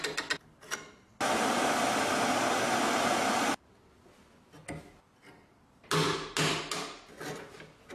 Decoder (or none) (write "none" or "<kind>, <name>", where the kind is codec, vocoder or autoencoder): none